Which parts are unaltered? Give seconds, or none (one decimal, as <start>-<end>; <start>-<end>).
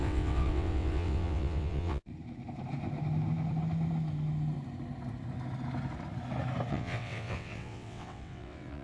2.1-6.7